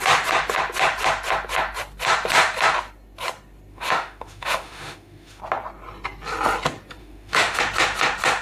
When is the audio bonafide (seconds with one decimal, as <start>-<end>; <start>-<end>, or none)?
0.0-3.7; 5.4-7.0; 7.6-8.4